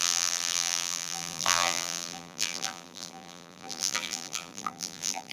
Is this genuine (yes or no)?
no